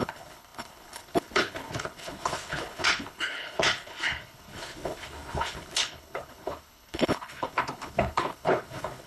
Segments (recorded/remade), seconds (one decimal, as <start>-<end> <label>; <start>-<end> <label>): 0.0-9.1 remade